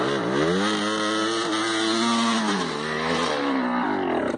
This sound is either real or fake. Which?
real